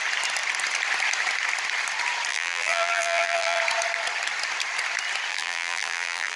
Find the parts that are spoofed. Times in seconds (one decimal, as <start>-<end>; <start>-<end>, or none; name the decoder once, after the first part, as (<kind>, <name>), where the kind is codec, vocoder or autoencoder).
2.3-3.6 (vocoder, BigVGAN v2); 5.3-6.4